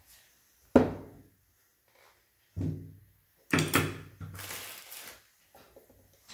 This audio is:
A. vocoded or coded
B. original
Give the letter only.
B